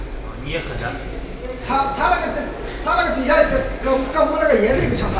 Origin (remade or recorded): recorded